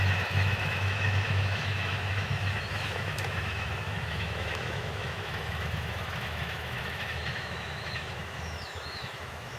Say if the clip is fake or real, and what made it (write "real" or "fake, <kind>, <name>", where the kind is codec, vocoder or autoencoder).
fake, autoencoder, DAC-VAE